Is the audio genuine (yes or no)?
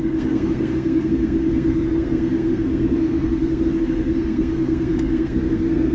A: no